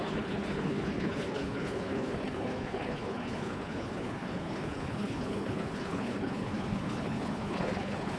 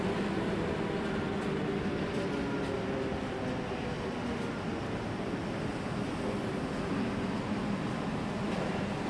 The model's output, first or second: first